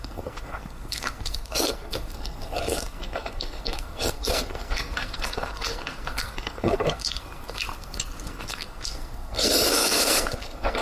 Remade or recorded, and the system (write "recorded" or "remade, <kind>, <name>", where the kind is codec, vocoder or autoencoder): remade, codec, SNAC